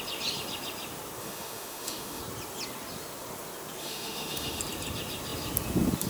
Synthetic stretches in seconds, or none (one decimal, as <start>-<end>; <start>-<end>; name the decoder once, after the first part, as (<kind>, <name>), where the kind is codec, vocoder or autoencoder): 1.2-2.2 (autoencoder, DAC-VAE); 3.8-4.6